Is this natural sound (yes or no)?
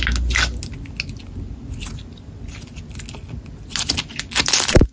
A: yes